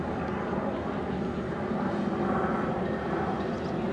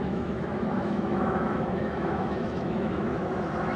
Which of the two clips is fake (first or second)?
second